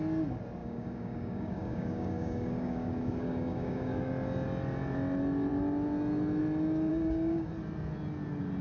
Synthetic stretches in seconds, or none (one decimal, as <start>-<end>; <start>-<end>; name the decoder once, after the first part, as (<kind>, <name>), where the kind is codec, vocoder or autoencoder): 0.6-4.1 (codec, DAC); 6.9-7.5